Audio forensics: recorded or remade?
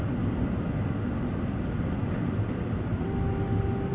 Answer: recorded